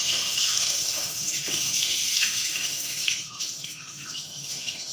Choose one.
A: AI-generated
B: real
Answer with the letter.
A